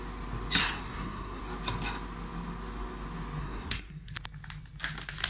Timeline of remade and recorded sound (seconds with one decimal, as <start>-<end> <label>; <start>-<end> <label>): 0.0-0.6 recorded; 0.6-1.4 remade; 1.4-3.4 recorded; 3.4-4.1 remade; 4.1-5.3 recorded